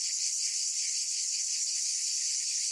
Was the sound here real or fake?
fake